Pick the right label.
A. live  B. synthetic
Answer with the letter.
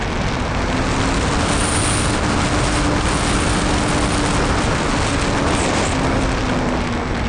A